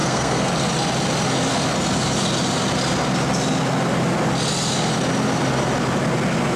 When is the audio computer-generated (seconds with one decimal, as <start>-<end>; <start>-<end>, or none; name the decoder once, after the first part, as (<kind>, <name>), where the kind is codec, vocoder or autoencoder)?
0.0-0.5 (codec, SNAC)